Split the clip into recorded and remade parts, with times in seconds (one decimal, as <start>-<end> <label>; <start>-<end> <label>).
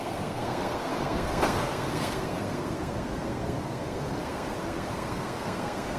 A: 0.0-6.0 remade